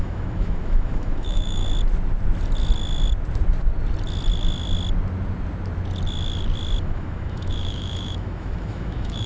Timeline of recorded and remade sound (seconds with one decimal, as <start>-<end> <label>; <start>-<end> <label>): 0.0-1.6 remade; 1.6-6.8 recorded; 6.8-9.3 remade